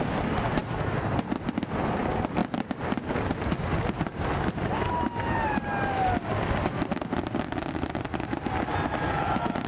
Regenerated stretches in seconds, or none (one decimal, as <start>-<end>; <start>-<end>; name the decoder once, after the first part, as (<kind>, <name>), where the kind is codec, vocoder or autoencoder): none